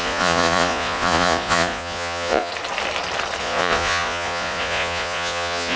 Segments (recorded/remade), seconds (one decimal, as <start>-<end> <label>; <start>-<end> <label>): 0.0-2.5 remade; 2.5-3.4 recorded; 3.4-5.8 remade